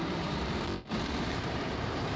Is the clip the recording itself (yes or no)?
no